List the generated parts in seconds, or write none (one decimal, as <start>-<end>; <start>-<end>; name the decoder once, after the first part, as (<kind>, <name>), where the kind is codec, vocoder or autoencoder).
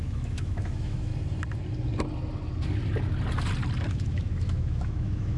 0.0-1.1 (autoencoder, DAC-VAE); 3.9-5.4